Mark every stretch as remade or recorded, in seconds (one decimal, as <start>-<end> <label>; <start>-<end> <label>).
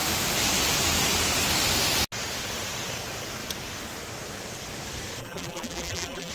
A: 0.0-5.2 recorded; 5.2-6.3 remade